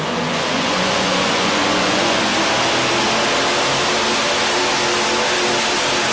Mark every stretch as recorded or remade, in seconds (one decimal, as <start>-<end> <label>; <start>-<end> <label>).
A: 0.0-2.3 remade; 2.3-6.1 recorded